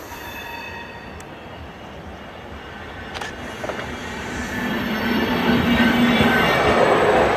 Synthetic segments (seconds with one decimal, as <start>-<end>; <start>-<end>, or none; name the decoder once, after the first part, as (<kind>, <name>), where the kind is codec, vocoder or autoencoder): 4.0-6.3 (vocoder, BigVGAN v2)